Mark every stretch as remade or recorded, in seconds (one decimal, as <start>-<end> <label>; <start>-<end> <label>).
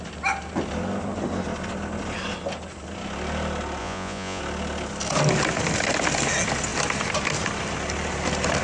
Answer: 0.0-3.8 recorded; 3.8-4.4 remade; 4.4-8.6 recorded